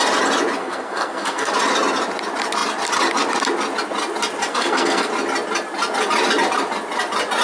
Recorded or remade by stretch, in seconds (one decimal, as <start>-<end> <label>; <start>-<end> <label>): 0.0-0.6 recorded; 0.6-1.5 remade; 1.5-4.5 recorded; 4.5-5.1 remade; 5.1-7.4 recorded